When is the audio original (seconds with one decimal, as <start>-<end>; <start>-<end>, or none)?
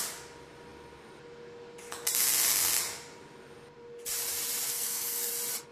0.0-4.7; 5.3-5.7